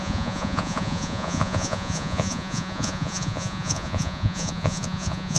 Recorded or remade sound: remade